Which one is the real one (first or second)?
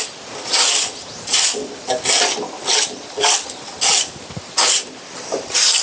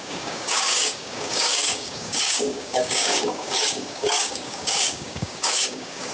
first